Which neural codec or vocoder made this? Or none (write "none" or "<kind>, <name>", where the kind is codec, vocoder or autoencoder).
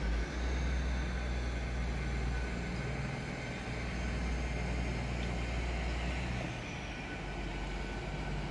none